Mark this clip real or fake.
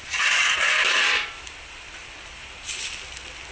fake